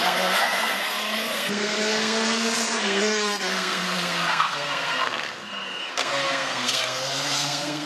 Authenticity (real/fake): fake